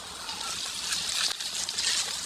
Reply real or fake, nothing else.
real